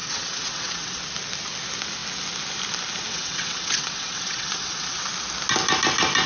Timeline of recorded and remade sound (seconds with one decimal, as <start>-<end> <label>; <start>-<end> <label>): 0.0-1.0 remade; 1.0-3.1 recorded; 3.1-5.0 remade; 5.0-6.3 recorded